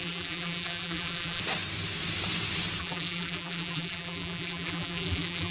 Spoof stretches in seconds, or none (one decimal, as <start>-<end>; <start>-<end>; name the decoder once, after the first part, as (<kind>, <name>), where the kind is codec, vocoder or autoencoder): 0.0-1.4 (vocoder, BigVGAN v2); 2.8-5.5